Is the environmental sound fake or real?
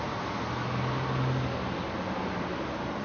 real